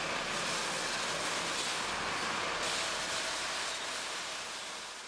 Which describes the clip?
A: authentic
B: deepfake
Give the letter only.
A